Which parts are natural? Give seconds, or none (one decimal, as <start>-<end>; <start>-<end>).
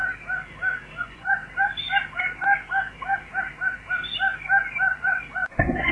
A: 0.0-0.9; 1.4-4.9